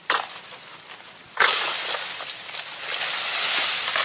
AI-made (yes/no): no